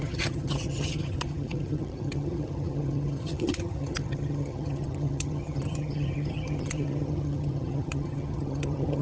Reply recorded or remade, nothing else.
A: remade